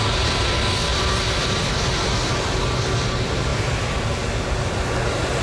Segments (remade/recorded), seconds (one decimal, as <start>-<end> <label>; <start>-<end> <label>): 0.0-5.4 recorded